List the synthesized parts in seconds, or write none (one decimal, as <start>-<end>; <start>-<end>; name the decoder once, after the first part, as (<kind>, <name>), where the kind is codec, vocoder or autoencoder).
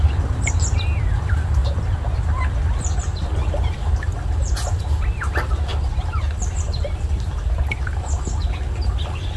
none